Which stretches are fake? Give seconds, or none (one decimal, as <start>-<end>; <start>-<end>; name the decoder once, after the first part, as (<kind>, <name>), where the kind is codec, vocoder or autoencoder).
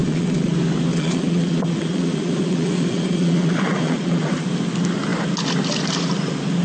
0.0-0.5 (vocoder, Vocos); 0.9-4.5